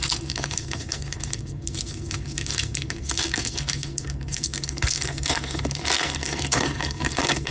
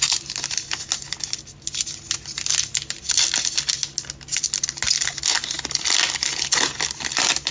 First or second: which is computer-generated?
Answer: first